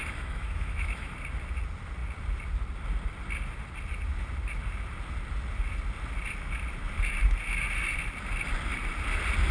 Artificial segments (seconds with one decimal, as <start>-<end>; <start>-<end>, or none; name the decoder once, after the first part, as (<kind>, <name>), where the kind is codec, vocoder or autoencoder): 0.0-1.1 (autoencoder, DAC-VAE)